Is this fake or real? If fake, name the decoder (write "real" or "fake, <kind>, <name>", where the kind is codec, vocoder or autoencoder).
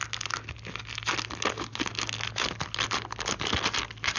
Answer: real